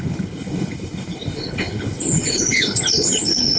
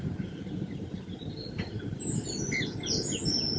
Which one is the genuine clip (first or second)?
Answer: second